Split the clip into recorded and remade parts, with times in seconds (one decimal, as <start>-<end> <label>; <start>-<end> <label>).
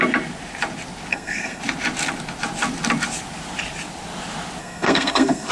0.0-1.1 recorded; 1.1-1.6 remade; 1.6-4.6 recorded; 4.6-5.5 remade